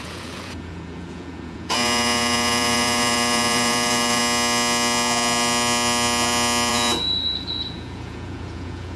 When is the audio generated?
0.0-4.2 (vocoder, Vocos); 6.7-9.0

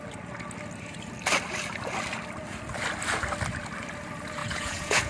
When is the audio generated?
4.4-5.1 (vocoder, Vocos)